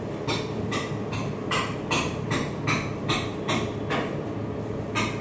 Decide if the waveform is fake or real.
real